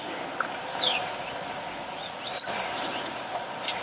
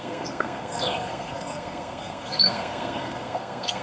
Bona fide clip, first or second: first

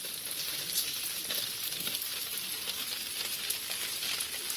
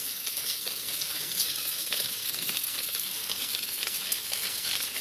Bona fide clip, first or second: first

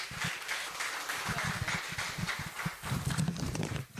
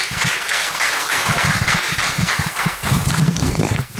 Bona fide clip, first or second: first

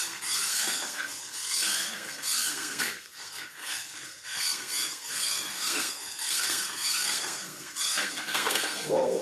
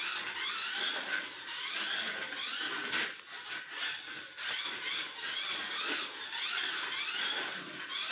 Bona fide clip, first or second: second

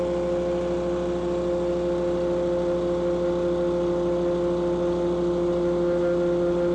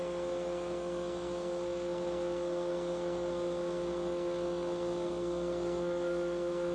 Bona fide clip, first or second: first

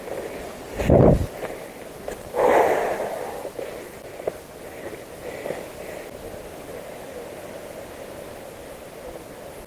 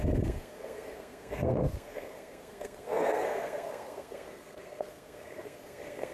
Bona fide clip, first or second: first